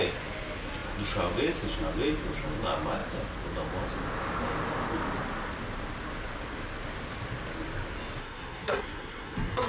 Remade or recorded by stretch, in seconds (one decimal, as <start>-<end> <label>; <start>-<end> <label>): 0.0-8.2 recorded; 8.2-9.7 remade